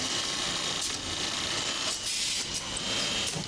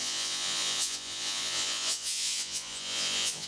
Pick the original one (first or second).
first